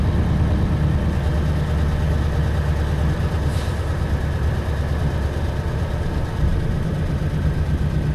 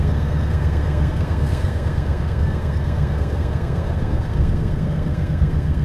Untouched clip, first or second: first